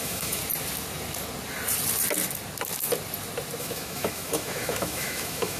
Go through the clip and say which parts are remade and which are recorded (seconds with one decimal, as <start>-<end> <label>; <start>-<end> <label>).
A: 0.0-0.4 remade; 0.4-3.6 recorded; 3.6-5.6 remade